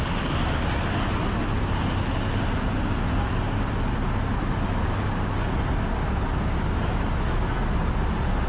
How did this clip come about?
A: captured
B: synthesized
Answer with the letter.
A